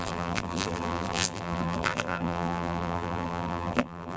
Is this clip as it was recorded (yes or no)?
no